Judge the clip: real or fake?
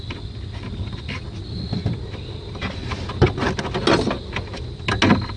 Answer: real